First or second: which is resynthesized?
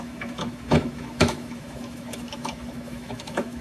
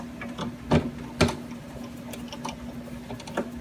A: first